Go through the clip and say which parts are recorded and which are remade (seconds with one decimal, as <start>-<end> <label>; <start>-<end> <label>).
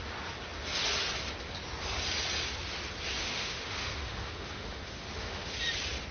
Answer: 0.0-3.1 recorded; 3.1-5.5 remade; 5.5-6.1 recorded